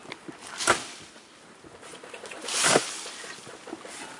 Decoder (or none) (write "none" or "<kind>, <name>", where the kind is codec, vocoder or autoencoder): none